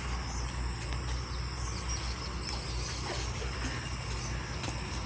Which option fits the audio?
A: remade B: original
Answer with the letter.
B